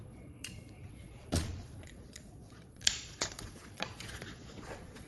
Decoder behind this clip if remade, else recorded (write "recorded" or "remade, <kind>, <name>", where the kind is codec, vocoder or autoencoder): remade, vocoder, Vocos